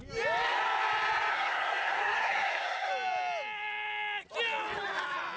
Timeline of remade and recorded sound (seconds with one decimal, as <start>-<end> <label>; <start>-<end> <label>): 0.0-1.3 recorded; 1.3-2.9 remade; 2.9-5.4 recorded